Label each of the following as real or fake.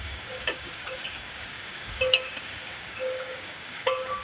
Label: fake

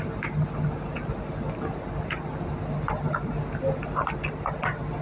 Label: real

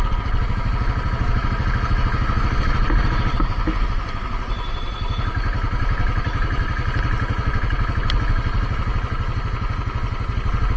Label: real